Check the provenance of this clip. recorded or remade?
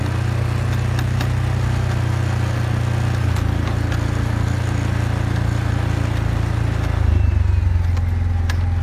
recorded